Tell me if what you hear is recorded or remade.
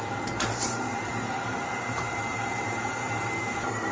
remade